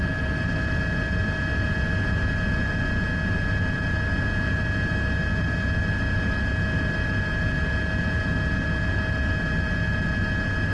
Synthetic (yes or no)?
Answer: no